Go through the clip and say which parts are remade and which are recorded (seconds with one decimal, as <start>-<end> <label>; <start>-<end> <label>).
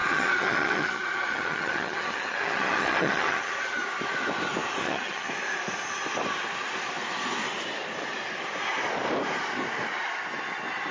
0.0-3.8 remade; 3.8-4.8 recorded; 4.8-5.3 remade; 5.3-10.9 recorded